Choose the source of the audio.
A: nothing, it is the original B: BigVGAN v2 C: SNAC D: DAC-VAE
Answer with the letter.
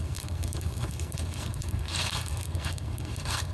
C